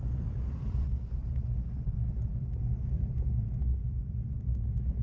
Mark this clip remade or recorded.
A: recorded